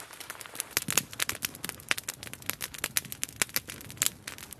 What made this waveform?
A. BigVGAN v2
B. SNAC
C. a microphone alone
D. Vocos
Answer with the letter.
C